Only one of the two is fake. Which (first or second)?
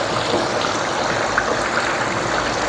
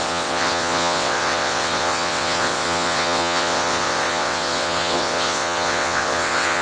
second